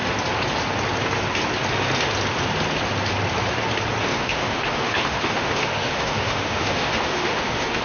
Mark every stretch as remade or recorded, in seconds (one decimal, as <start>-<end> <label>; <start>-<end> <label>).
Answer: 0.0-4.1 recorded; 4.1-7.8 remade